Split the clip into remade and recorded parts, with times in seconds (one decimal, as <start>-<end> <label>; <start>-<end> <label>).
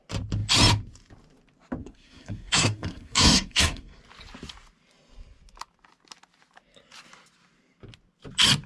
0.0-1.8 recorded; 1.8-4.0 remade; 4.0-8.7 recorded